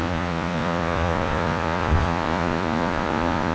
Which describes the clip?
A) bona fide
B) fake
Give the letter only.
B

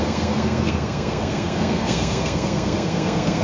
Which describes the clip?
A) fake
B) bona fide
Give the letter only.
A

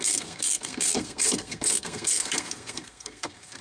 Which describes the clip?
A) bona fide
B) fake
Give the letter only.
B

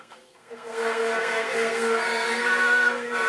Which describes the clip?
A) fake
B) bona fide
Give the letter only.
A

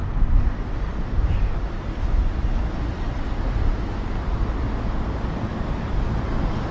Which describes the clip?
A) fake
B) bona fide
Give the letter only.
B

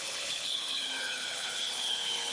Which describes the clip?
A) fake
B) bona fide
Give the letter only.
A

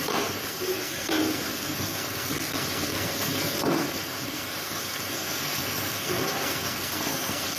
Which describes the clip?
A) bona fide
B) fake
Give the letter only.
B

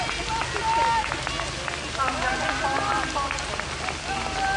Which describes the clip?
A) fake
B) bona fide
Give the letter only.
B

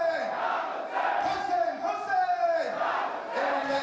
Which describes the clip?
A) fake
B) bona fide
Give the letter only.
B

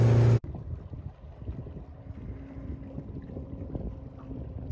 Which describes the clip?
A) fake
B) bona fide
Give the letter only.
B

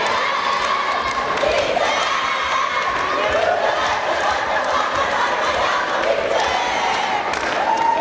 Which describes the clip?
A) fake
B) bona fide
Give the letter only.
A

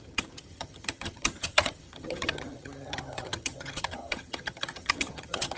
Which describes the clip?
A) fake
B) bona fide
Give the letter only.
A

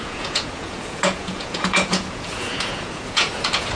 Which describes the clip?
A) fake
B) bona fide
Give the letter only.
A